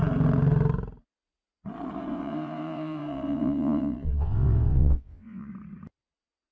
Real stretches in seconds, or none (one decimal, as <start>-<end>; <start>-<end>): 0.0-2.1; 5.5-6.5